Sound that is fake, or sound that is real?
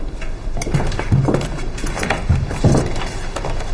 real